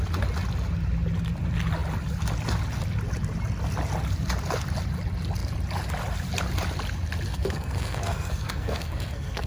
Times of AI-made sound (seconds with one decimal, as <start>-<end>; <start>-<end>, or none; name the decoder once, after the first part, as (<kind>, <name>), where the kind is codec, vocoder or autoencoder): 7.3-9.5 (codec, SNAC)